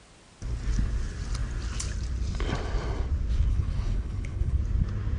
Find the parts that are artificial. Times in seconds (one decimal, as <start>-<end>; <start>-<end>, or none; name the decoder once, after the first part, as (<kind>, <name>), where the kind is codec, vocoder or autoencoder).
3.5-4.6 (codec, HILCodec)